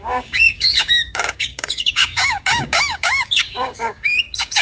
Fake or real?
fake